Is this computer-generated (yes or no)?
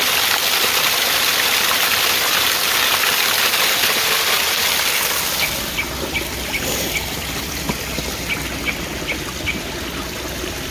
no